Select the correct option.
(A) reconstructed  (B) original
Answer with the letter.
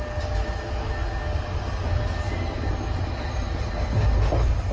B